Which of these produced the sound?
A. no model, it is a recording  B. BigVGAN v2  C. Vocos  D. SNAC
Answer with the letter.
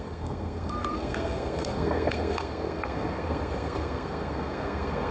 D